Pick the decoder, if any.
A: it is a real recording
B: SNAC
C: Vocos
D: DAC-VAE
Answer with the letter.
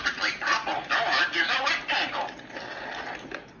A